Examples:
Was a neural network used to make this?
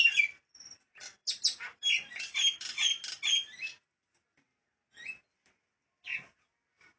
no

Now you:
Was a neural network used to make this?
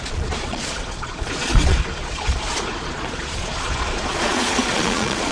yes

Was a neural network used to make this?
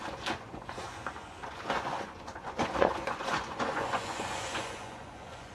yes